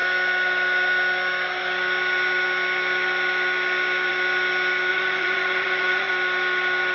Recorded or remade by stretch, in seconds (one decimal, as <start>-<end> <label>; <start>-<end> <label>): 0.0-4.9 recorded; 4.9-6.1 remade; 6.1-6.9 recorded